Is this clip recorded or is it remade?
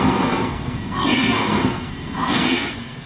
remade